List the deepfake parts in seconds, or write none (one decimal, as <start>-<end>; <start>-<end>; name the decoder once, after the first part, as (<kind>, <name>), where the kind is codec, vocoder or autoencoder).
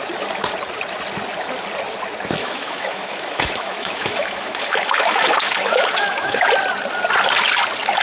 2.4-6.5 (autoencoder, DAC-VAE)